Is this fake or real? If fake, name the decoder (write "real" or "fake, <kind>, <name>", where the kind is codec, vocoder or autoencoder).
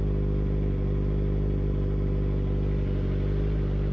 real